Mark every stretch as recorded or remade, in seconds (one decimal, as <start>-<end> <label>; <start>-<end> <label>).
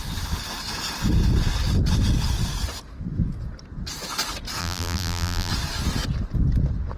0.0-4.6 recorded; 4.6-5.5 remade; 5.5-7.0 recorded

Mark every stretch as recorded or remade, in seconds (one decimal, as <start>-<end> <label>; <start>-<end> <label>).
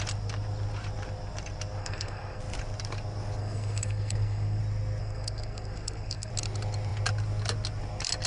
0.0-1.8 recorded; 1.8-2.4 remade; 2.4-3.4 recorded; 3.4-4.6 remade; 4.6-5.0 recorded; 5.0-6.3 remade; 6.3-8.3 recorded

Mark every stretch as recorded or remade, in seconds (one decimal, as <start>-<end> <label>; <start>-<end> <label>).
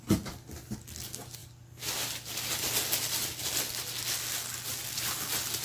0.0-5.6 recorded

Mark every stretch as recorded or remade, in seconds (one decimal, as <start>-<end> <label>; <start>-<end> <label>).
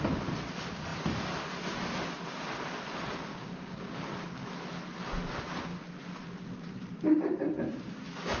0.0-3.3 recorded; 3.3-3.9 remade; 3.9-8.4 recorded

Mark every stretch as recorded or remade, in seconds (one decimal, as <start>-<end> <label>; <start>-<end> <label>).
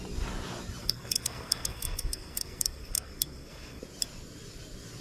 0.0-0.8 recorded; 0.8-3.8 remade; 3.8-5.0 recorded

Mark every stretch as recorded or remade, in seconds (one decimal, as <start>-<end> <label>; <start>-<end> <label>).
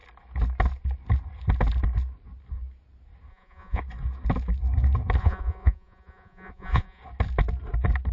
0.0-3.3 recorded; 3.3-3.8 remade; 3.8-5.2 recorded; 5.2-7.0 remade; 7.0-8.1 recorded